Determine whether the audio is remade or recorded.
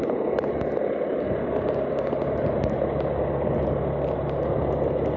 recorded